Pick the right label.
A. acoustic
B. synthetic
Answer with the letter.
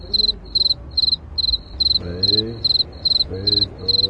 A